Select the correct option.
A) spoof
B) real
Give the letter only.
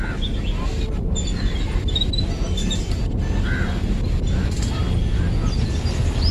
B